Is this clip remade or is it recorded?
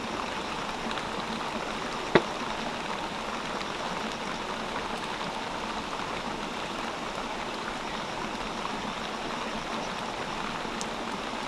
recorded